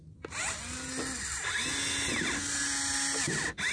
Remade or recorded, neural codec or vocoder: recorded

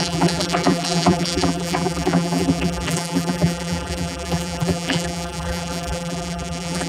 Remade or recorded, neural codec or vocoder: remade, vocoder, BigVGAN v2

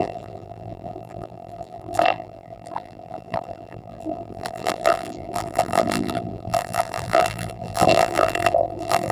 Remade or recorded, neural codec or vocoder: remade, vocoder, BigVGAN v2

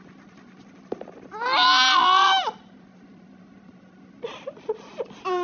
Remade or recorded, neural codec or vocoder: recorded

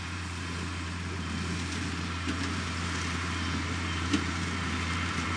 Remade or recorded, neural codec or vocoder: remade, vocoder, BigVGAN v2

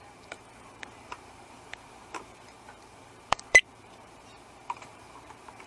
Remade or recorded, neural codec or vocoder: remade, vocoder, BigVGAN v2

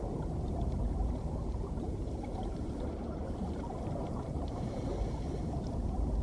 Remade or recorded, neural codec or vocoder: remade, vocoder, BigVGAN v2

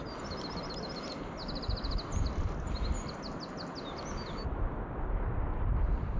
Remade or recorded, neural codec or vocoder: recorded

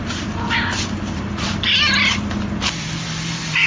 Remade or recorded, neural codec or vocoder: remade, vocoder, BigVGAN v2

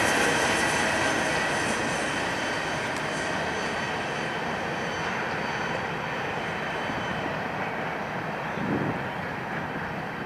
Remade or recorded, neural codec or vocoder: recorded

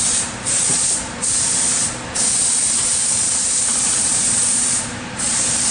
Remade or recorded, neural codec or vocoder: remade, vocoder, BigVGAN v2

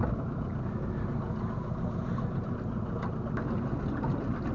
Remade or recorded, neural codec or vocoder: recorded